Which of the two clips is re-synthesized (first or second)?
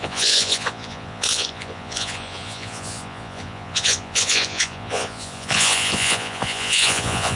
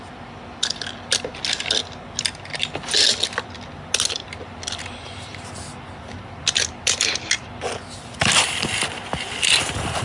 first